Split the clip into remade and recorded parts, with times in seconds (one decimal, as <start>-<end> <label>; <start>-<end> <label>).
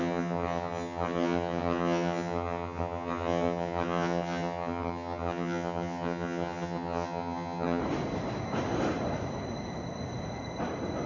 0.0-7.8 remade; 7.8-11.1 recorded